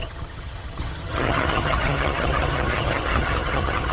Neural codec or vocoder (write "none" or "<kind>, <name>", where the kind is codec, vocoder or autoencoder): vocoder, HiFi-GAN